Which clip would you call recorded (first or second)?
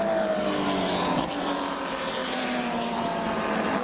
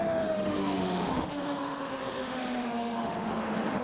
first